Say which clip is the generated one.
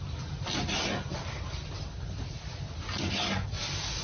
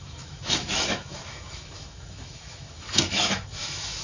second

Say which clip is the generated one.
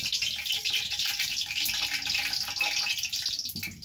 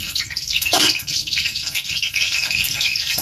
second